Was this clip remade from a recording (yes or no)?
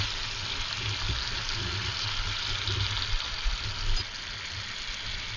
no